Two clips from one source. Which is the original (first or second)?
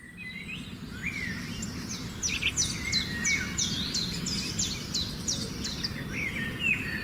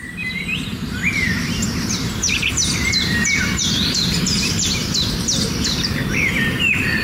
first